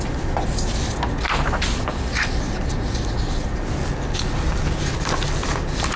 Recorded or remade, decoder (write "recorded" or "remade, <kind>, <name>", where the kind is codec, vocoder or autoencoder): recorded